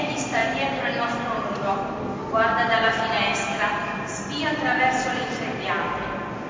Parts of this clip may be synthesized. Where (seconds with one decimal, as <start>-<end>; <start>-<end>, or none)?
none